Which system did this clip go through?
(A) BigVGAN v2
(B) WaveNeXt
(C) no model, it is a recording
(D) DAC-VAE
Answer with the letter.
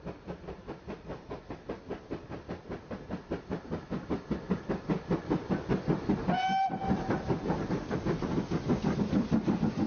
C